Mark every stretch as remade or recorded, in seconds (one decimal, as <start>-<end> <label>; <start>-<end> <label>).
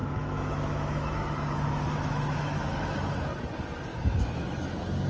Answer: 0.0-3.1 remade; 3.1-3.9 recorded; 3.9-4.6 remade; 4.6-5.1 recorded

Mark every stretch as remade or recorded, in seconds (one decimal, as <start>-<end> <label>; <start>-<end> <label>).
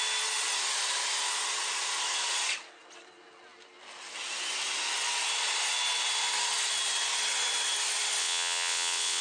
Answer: 0.0-8.2 recorded; 8.2-9.2 remade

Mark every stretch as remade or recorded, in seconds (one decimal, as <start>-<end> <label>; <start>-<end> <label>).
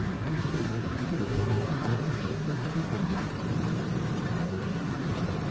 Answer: 0.0-3.3 remade; 3.3-4.4 recorded; 4.4-5.1 remade; 5.1-5.5 recorded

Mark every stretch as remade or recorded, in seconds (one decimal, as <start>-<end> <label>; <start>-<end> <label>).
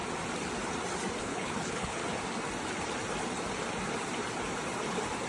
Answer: 0.0-1.2 recorded; 1.2-2.0 remade; 2.0-5.3 recorded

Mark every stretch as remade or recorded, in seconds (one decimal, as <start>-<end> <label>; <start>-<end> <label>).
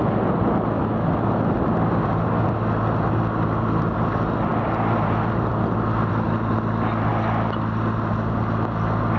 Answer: 0.0-9.2 recorded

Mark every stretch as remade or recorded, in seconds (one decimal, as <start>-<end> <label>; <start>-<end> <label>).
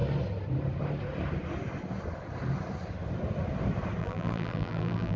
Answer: 0.0-4.0 recorded; 4.0-5.2 remade